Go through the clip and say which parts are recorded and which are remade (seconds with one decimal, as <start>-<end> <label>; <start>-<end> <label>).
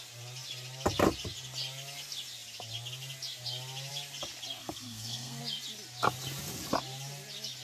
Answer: 0.0-4.6 recorded; 4.6-5.4 remade; 5.4-7.6 recorded